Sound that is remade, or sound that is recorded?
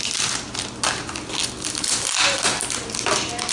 recorded